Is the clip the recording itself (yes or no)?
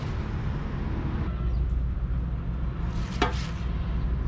yes